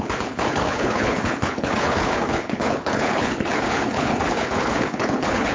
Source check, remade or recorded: remade